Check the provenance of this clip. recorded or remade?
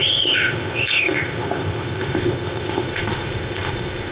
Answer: remade